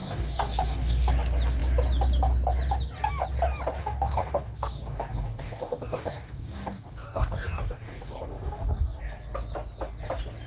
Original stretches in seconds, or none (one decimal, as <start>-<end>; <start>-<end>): 1.1-3.8; 9.0-10.5